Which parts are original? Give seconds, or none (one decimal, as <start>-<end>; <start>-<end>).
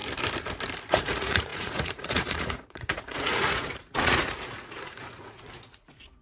0.0-1.0